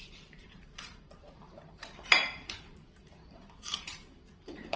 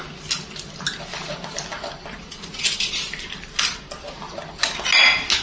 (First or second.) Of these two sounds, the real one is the second